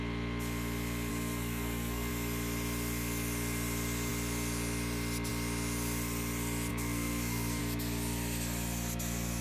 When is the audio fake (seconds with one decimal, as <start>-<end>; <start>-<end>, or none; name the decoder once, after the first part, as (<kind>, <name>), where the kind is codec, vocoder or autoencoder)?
1.1-2.1 (codec, SNAC); 6.7-7.6